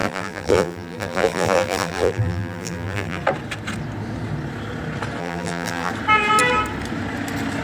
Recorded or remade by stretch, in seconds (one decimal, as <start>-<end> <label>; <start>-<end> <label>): 0.0-3.2 remade; 3.2-5.2 recorded; 5.2-5.9 remade; 5.9-7.6 recorded